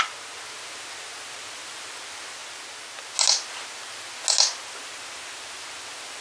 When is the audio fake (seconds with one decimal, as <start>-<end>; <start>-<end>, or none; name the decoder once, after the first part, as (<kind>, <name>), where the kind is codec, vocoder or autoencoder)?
none